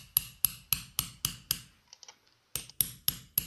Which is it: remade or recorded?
recorded